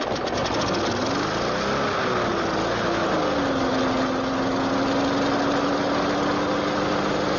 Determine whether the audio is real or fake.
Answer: real